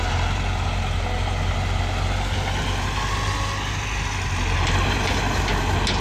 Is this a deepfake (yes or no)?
no